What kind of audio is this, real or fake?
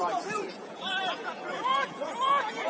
fake